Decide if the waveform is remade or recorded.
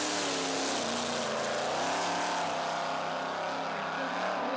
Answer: recorded